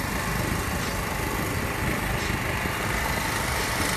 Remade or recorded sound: recorded